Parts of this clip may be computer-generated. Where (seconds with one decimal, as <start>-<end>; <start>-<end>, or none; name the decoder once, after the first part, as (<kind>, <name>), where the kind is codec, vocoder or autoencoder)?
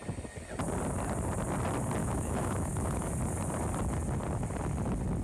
2.0-3.1 (autoencoder, DAC-VAE)